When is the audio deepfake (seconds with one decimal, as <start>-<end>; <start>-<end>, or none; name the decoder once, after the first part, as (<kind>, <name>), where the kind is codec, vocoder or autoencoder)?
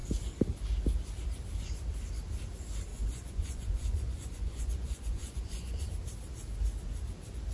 2.9-5.8 (vocoder, Vocos)